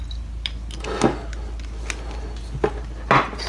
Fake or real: real